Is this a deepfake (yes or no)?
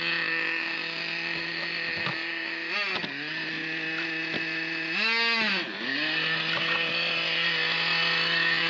no